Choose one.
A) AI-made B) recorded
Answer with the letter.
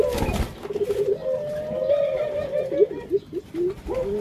B